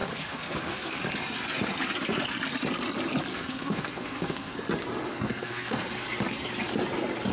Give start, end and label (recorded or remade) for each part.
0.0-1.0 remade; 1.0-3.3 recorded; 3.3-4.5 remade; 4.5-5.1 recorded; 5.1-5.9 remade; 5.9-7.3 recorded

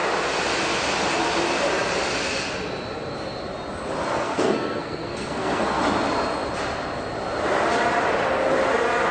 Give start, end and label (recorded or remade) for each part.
0.0-4.1 recorded; 4.1-5.8 remade; 5.8-9.1 recorded

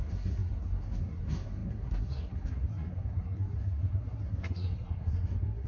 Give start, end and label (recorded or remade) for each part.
0.0-5.7 remade

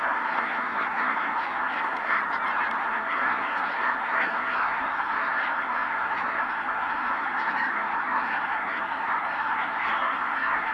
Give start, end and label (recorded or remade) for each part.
0.0-2.2 remade; 2.2-2.8 recorded; 2.8-10.7 remade